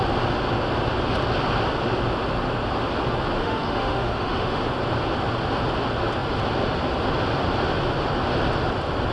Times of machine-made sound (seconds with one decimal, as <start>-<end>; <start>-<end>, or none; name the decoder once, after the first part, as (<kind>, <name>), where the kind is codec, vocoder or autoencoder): 3.4-4.6 (autoencoder, DAC-VAE)